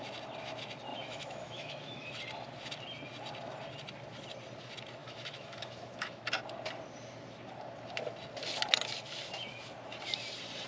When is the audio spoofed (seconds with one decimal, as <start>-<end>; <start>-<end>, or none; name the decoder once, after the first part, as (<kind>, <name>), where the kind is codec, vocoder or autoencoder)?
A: 0.9-2.2 (autoencoder, DAC-VAE); 5.0-6.2